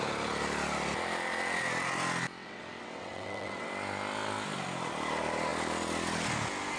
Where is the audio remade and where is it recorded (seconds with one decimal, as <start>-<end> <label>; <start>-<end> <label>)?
0.0-2.4 recorded; 2.4-3.7 remade; 3.7-6.8 recorded